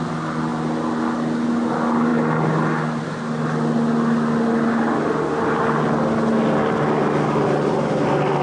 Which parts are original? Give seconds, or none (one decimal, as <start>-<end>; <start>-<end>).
0.0-8.4